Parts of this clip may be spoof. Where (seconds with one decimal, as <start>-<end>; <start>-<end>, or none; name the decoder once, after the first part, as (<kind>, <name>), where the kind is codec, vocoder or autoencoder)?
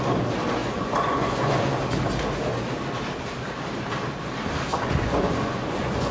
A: 0.6-1.6 (vocoder, Vocos); 4.7-6.1